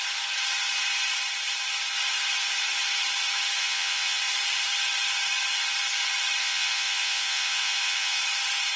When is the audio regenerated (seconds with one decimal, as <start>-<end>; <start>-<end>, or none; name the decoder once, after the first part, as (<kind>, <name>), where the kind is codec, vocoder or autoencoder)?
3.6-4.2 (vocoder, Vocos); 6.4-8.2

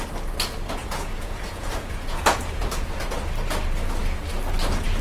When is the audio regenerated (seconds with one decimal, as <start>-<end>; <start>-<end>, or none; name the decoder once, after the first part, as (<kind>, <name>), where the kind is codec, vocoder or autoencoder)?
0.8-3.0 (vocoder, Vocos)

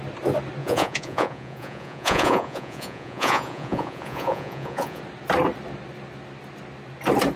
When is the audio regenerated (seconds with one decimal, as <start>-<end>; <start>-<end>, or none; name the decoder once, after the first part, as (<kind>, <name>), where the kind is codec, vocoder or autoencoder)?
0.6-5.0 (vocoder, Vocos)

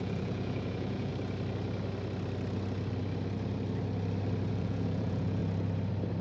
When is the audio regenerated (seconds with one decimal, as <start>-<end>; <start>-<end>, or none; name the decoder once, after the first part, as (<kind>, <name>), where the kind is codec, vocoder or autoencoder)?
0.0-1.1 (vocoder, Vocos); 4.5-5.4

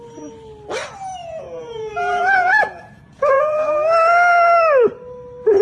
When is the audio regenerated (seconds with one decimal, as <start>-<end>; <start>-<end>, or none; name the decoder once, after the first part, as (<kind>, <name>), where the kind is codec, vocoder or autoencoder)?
1.2-3.7 (vocoder, Vocos)

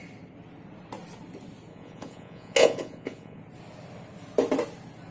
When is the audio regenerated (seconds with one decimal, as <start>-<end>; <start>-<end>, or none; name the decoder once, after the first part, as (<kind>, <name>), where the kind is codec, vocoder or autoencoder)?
1.7-3.4 (vocoder, Vocos)